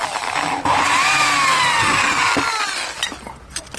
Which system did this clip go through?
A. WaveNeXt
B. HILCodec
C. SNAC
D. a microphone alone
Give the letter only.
D